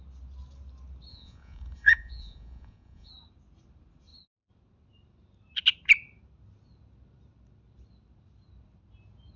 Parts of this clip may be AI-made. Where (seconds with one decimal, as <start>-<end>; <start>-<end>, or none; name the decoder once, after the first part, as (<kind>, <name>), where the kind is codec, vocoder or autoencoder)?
1.1-3.1 (vocoder, Vocos)